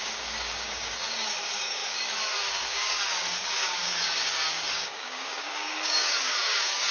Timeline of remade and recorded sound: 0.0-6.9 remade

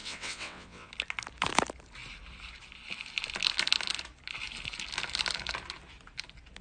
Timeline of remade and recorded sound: 0.0-0.9 remade; 0.9-6.6 recorded

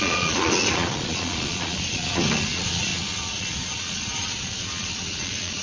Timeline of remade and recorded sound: 0.0-5.6 remade

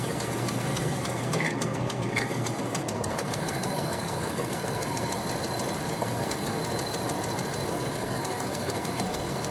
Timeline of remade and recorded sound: 0.0-5.2 remade; 5.2-5.9 recorded; 5.9-6.6 remade; 6.6-7.7 recorded; 7.7-9.5 remade

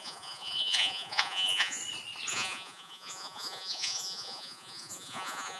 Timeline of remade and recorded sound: 0.0-1.8 remade; 1.8-2.3 recorded; 2.3-5.6 remade

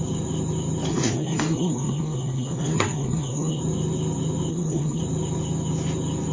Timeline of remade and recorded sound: 0.0-0.9 recorded; 0.9-3.6 remade; 3.6-4.5 recorded; 4.5-5.0 remade; 5.0-6.3 recorded

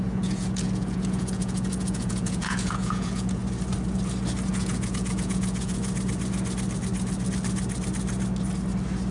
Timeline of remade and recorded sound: 0.0-3.4 remade; 3.4-4.5 recorded; 4.5-5.8 remade; 5.8-9.1 recorded

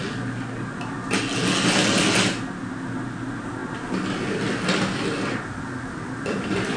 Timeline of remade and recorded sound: 0.0-6.8 recorded